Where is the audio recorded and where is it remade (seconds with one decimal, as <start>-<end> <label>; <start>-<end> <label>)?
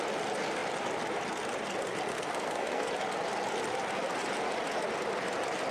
0.0-2.1 recorded; 2.1-2.9 remade; 2.9-5.7 recorded